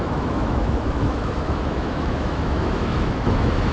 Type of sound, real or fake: fake